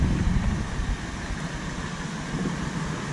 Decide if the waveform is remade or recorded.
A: recorded